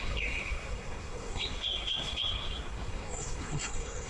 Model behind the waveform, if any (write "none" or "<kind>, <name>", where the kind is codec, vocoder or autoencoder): codec, SNAC